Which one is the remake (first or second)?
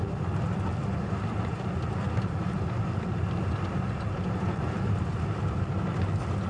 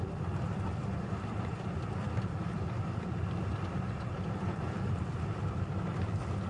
second